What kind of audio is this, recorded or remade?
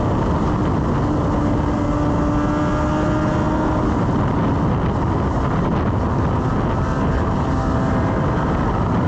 recorded